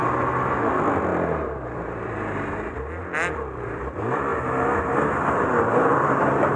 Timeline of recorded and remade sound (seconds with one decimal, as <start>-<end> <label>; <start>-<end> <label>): 0.0-0.6 recorded; 0.6-4.3 remade; 4.3-5.9 recorded; 5.9-6.6 remade